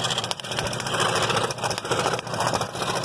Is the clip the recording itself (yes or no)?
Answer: yes